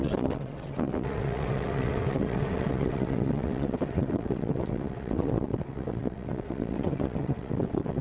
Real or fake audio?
fake